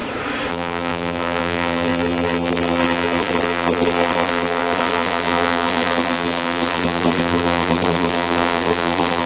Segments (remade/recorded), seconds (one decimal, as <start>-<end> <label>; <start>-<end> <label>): 0.0-0.5 recorded; 0.5-9.3 remade